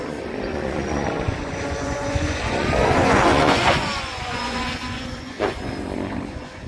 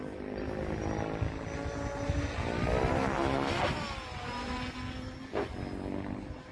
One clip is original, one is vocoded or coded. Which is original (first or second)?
second